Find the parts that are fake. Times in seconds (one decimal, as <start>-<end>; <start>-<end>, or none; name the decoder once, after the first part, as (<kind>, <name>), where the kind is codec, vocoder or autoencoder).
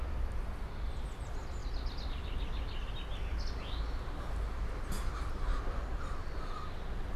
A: none